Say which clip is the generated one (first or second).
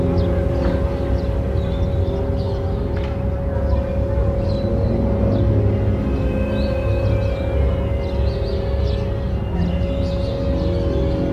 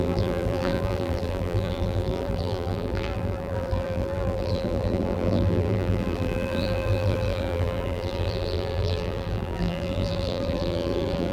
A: second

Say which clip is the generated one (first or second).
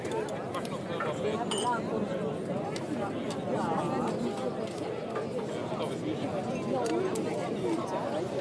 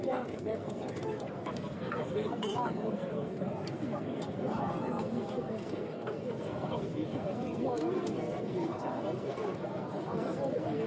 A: second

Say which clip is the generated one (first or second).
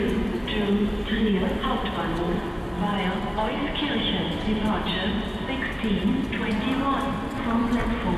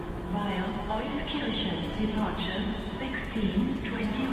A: second